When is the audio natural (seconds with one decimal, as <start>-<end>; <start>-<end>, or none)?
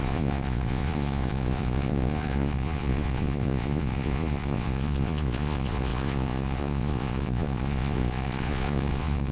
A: none